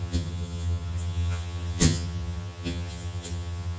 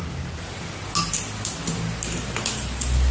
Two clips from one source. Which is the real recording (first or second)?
second